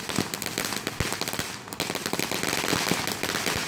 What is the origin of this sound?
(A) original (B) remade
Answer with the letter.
A